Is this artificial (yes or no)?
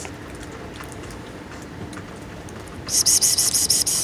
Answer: yes